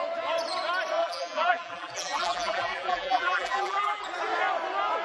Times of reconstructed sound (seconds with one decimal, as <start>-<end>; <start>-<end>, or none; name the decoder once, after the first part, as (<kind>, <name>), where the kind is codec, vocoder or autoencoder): 1.0-4.0 (vocoder, BigVGAN v2)